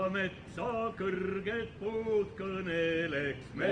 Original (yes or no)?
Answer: yes